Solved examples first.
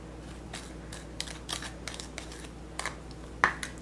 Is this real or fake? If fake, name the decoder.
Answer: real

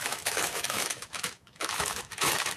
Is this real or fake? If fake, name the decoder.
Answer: fake, autoencoder, DAC-VAE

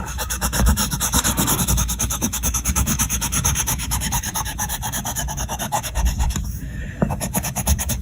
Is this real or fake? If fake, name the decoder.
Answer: fake, codec, DAC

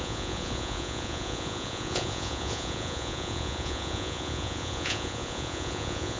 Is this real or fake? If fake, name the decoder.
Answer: fake, vocoder, Vocos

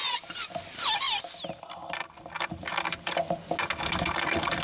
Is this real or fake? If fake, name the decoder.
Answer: real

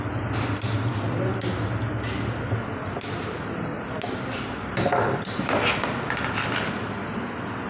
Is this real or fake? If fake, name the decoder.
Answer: real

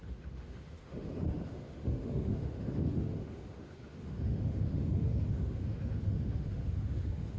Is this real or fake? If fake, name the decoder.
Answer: fake, autoencoder, DAC-VAE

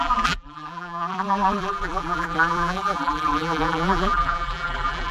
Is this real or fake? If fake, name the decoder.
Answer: fake, vocoder, BigVGAN v2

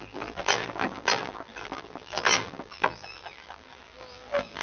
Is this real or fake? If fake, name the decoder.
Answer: fake, vocoder, BigVGAN v2